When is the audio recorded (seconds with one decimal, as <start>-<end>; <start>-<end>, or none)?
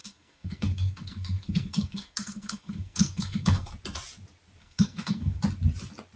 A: 3.7-4.6; 5.4-6.2